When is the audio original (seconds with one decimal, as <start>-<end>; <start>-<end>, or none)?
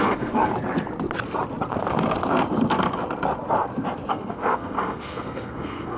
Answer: 0.5-4.1